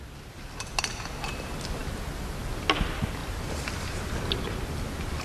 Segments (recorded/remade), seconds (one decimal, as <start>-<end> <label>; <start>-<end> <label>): 0.0-5.2 recorded